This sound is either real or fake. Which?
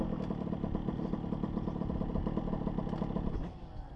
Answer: real